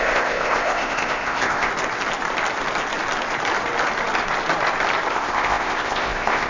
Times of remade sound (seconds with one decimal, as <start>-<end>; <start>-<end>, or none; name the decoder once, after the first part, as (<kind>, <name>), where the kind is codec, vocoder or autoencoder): 0.0-1.7 (codec, ZipCodec); 5.1-6.5